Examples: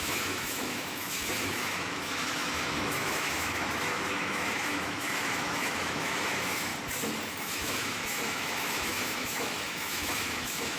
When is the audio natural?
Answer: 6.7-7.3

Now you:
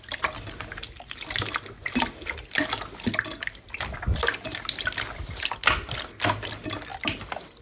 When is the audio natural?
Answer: 0.0-7.6

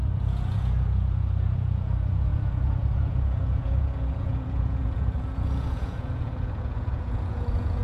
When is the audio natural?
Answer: none

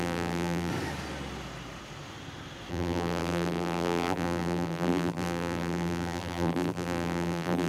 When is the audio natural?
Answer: 0.7-2.7

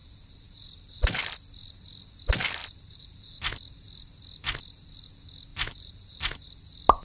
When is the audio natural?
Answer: 1.2-2.6; 3.4-5.5; 6.5-7.0

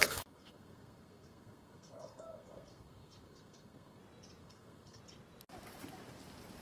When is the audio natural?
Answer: 4.0-4.4; 5.0-6.6

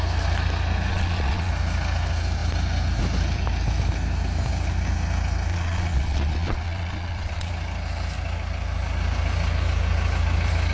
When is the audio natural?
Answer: 0.0-0.9; 1.5-5.5; 7.5-10.7